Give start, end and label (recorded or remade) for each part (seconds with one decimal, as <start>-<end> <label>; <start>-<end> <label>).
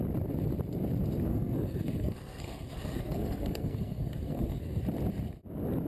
0.0-1.3 recorded; 1.3-4.8 remade; 4.8-5.9 recorded